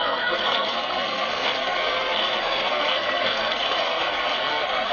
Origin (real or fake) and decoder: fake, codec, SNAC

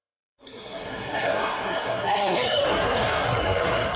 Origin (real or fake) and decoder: fake, codec, SNAC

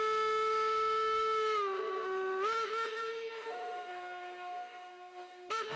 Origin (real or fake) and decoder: fake, autoencoder, DAC-VAE